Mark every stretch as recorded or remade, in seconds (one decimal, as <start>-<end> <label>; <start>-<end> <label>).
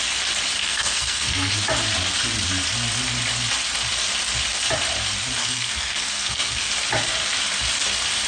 0.0-0.6 recorded; 0.6-1.5 remade; 1.5-5.4 recorded; 5.4-6.7 remade; 6.7-8.3 recorded